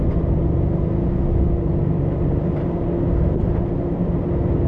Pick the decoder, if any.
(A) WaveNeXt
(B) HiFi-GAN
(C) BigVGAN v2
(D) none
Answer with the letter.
D